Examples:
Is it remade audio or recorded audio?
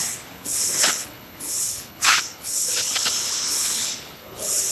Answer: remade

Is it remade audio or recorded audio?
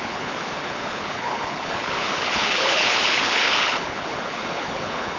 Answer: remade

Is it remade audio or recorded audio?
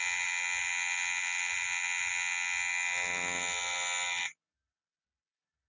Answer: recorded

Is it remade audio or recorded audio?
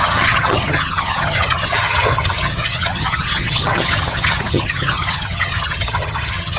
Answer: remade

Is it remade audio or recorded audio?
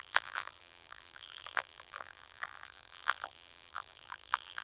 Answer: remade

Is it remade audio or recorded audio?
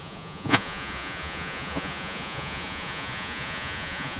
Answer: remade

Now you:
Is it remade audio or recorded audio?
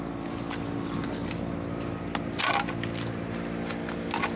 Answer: recorded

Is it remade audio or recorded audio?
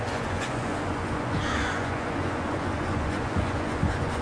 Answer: remade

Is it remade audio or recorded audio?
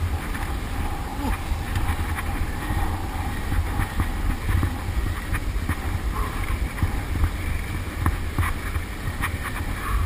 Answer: recorded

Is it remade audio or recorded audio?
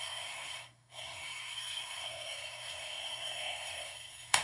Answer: remade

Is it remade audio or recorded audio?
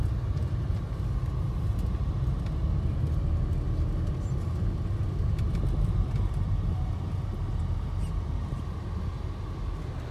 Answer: recorded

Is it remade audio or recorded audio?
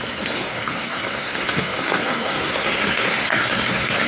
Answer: remade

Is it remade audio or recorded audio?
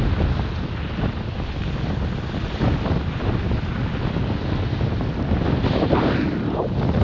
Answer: recorded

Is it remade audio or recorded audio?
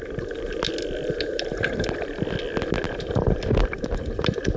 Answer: recorded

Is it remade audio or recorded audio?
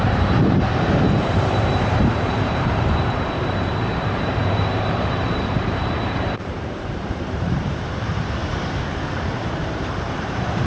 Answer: remade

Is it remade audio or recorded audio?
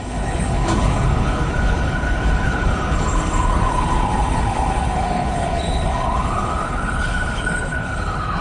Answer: remade